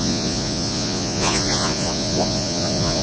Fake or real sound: fake